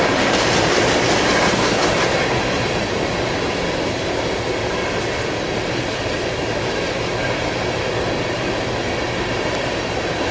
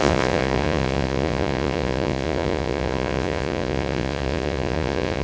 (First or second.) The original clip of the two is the first